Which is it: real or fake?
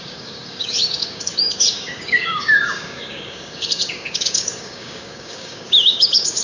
fake